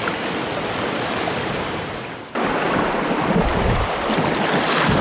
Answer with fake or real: real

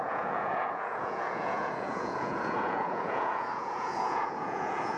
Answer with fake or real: fake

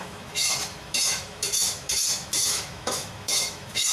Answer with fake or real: fake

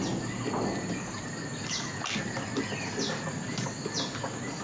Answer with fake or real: real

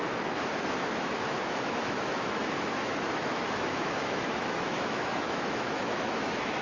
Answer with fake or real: fake